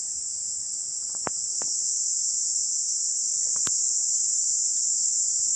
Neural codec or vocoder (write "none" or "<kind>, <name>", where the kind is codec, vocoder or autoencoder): none